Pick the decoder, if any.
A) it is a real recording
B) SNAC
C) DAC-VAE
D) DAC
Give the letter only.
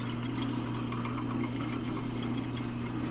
A